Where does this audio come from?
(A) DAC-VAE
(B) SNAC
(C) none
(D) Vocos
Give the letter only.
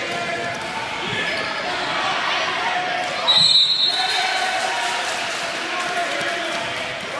C